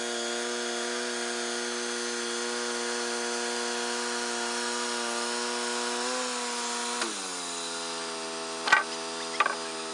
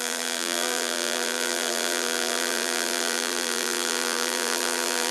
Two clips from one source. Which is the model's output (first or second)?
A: second